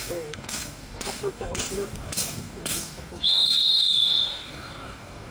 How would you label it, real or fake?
fake